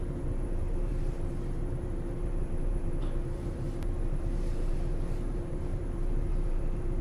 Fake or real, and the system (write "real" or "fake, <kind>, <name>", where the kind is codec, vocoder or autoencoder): fake, vocoder, BigVGAN v2